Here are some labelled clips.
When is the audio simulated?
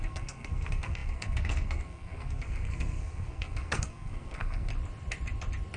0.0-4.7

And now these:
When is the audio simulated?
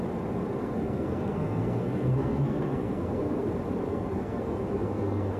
0.6-3.5; 3.9-5.4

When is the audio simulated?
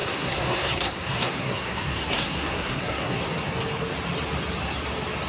0.0-3.2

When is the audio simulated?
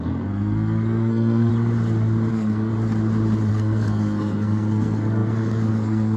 0.0-1.5; 2.3-2.7; 3.5-6.2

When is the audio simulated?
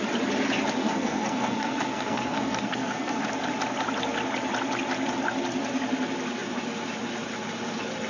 0.8-3.2